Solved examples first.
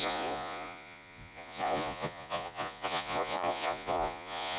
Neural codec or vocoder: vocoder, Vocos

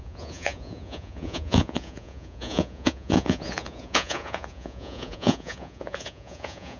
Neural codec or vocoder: vocoder, Vocos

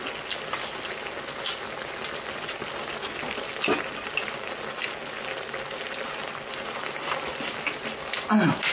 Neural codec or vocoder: none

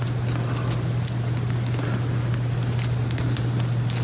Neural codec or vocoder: none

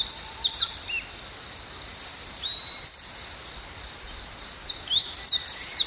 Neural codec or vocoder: none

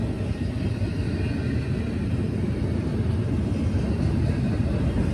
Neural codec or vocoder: none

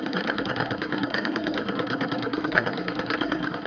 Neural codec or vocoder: codec, SNAC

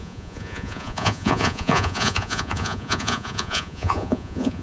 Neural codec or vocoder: vocoder, Vocos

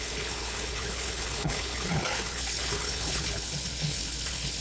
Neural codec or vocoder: codec, HILCodec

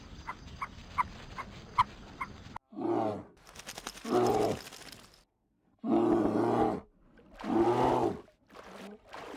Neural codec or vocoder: none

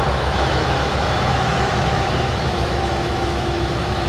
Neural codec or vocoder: autoencoder, DAC-VAE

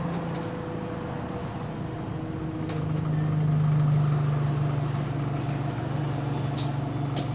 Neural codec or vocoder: none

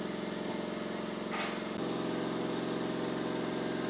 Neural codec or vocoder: none